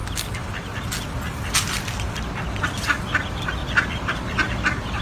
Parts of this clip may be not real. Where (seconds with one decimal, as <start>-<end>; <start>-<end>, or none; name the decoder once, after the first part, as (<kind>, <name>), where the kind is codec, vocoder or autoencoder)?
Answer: none